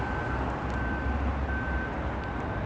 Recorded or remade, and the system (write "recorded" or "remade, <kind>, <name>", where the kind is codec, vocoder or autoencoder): recorded